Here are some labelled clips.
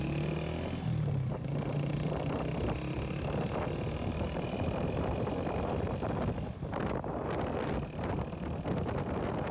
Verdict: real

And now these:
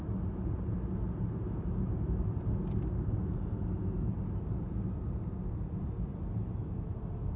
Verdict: real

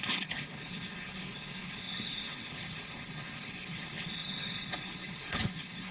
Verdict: fake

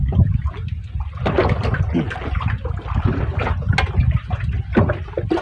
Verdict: real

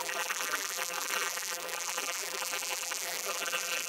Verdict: fake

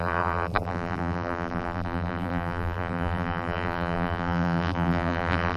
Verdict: fake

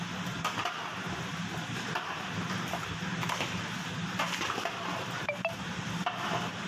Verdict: fake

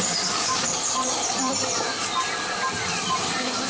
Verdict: real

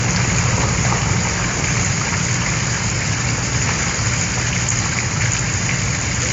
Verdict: real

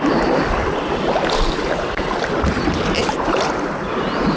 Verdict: real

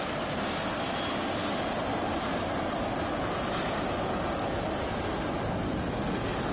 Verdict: real